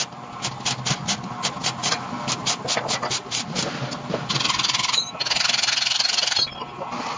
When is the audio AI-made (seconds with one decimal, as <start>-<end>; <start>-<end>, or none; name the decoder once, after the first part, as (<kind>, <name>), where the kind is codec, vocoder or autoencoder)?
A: none